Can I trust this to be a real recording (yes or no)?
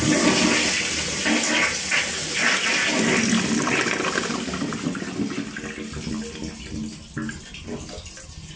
yes